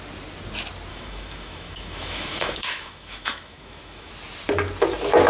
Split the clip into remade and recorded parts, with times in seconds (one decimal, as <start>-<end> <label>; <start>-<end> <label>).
0.0-0.9 recorded; 0.9-4.1 remade; 4.1-5.3 recorded